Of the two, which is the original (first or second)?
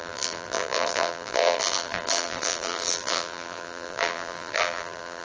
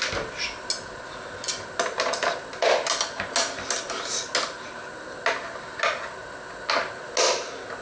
second